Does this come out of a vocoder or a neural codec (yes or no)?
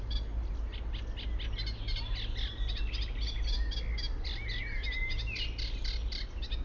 no